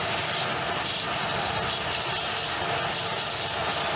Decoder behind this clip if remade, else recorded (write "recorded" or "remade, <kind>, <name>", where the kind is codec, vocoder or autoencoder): recorded